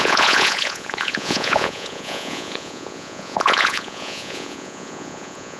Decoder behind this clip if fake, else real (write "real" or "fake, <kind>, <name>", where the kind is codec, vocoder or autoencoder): fake, vocoder, Vocos